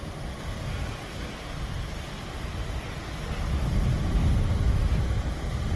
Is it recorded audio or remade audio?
recorded